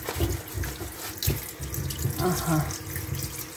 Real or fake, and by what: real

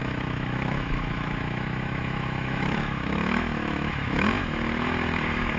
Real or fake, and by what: fake, autoencoder, DAC-VAE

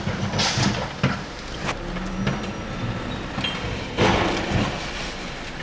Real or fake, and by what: real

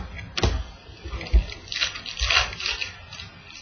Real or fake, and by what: real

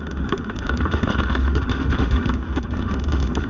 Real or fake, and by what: fake, autoencoder, DAC-VAE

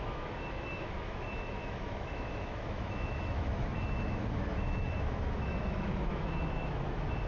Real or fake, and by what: fake, autoencoder, DAC-VAE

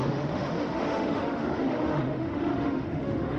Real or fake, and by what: fake, autoencoder, DAC-VAE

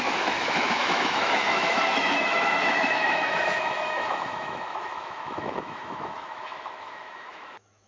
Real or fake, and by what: fake, autoencoder, DAC-VAE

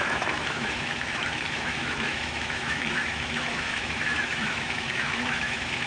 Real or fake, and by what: fake, autoencoder, DAC-VAE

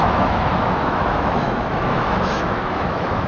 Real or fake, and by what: fake, autoencoder, DAC-VAE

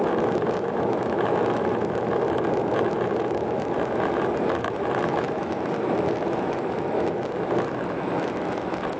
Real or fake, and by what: fake, autoencoder, DAC-VAE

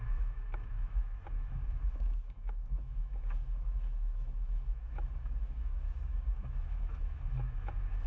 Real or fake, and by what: fake, autoencoder, DAC-VAE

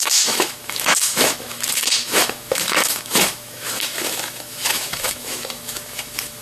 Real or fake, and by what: fake, autoencoder, DAC-VAE